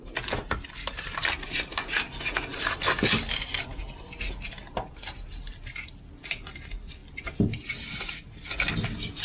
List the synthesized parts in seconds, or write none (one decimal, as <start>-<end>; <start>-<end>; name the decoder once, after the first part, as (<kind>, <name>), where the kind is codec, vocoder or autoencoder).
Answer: none